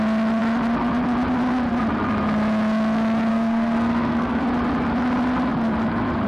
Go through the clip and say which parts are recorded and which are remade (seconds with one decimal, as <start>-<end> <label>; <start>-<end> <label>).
0.0-3.3 recorded; 3.3-4.4 remade; 4.4-6.3 recorded